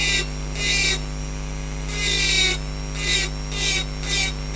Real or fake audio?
real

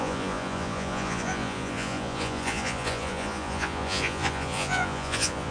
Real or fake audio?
fake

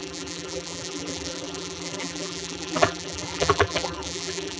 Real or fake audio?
fake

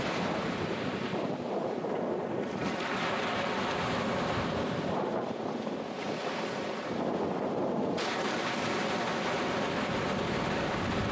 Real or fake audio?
real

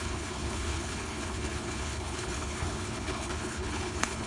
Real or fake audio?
fake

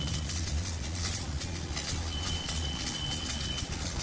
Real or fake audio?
fake